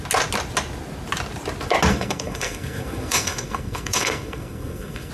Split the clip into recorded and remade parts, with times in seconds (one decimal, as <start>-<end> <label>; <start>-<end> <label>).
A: 0.0-1.9 recorded; 1.9-5.1 remade